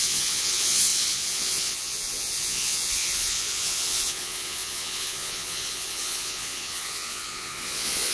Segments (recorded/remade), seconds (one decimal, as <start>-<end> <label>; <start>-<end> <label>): 0.0-8.1 remade